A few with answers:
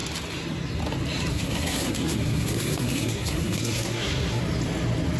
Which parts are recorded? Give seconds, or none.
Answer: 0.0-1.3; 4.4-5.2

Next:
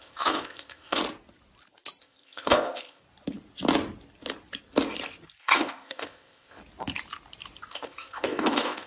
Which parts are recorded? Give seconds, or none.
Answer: 1.0-2.0; 3.0-5.4; 6.6-7.7

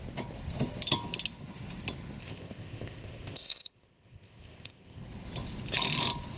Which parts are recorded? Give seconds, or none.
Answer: 0.0-2.2; 5.0-6.4

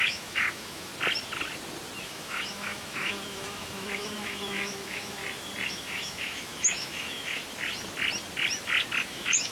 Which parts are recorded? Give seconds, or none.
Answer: 0.9-2.0; 5.2-5.7; 7.4-9.0

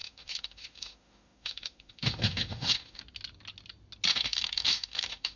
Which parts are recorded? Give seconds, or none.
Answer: 3.0-4.1